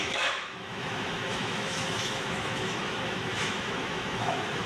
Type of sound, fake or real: fake